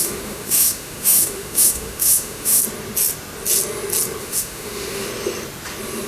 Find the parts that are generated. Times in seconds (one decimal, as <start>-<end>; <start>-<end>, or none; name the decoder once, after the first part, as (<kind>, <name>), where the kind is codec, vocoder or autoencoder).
0.0-2.6 (autoencoder, DAC-VAE); 4.2-5.1